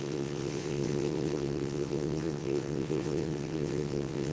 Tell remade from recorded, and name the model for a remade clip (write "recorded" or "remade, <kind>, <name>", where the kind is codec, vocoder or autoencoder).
remade, vocoder, WaveNeXt